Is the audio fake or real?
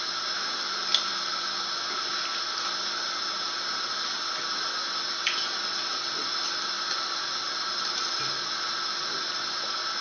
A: real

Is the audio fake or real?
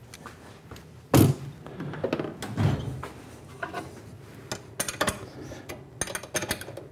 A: real